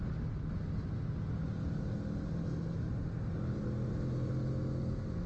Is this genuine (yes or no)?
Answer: yes